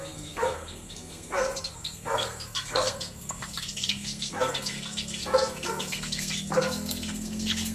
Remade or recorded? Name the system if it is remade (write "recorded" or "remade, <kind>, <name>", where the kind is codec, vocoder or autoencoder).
remade, codec, SNAC